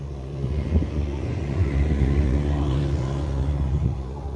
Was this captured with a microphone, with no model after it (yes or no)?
no